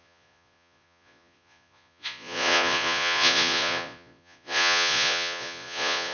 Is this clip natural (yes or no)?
no